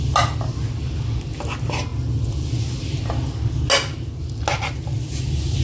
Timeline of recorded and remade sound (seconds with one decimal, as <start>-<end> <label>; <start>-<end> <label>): 0.0-5.6 recorded